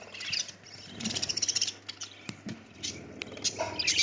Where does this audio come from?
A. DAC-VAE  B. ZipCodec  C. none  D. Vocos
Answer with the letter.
C